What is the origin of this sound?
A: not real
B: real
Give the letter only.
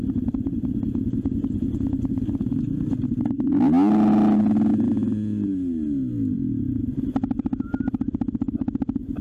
B